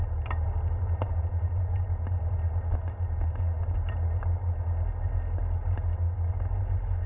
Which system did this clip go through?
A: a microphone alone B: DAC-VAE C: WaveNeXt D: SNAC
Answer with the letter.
A